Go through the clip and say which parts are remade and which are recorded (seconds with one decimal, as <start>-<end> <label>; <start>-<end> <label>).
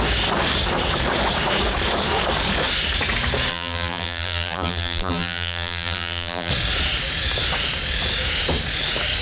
0.0-3.5 recorded; 3.5-6.5 remade; 6.5-9.2 recorded